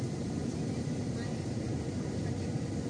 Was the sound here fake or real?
real